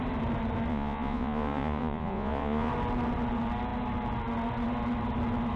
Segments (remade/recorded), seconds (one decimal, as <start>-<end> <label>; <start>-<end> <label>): 0.0-0.7 recorded; 0.7-2.7 remade; 2.7-5.6 recorded